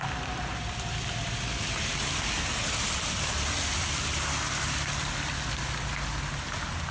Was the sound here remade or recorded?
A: recorded